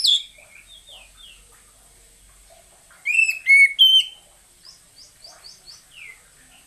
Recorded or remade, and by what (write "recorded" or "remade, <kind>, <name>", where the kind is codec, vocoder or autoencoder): recorded